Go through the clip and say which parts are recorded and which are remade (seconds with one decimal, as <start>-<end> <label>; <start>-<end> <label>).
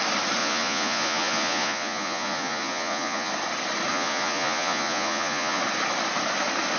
0.0-0.4 recorded; 0.4-3.3 remade; 3.3-3.9 recorded; 3.9-5.6 remade; 5.6-6.8 recorded